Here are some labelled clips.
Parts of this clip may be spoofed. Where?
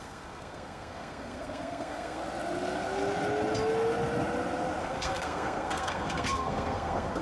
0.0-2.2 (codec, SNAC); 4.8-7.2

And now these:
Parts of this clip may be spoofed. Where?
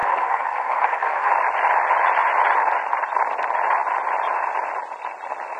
0.0-1.3 (codec, SNAC)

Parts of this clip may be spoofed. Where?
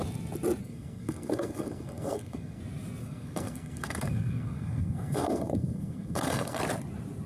0.6-2.6 (codec, SNAC); 3.0-6.6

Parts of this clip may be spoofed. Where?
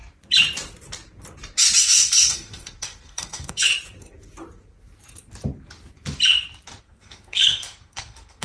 1.8-3.7 (codec, SNAC); 6.8-8.4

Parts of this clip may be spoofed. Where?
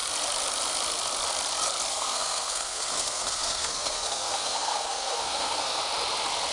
1.9-5.8 (codec, SNAC)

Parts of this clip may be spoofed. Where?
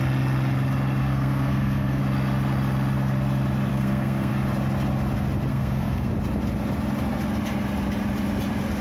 1.0-2.0 (codec, SNAC); 3.7-4.3; 5.5-6.1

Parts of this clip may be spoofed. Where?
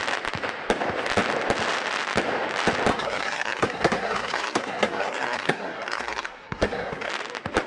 2.9-7.1 (codec, SNAC)